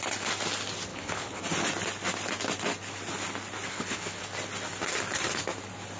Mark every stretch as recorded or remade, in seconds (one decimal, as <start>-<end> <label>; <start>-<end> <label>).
0.0-0.9 recorded; 0.9-1.4 remade; 1.4-3.7 recorded; 3.7-4.2 remade; 4.2-6.0 recorded